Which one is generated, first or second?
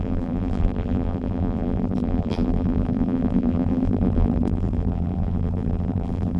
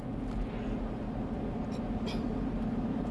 first